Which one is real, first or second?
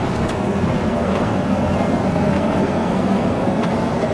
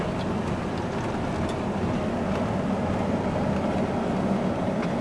second